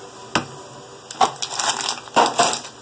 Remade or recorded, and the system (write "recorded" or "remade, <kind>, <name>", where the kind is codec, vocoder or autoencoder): recorded